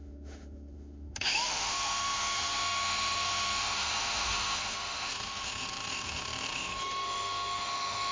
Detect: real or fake fake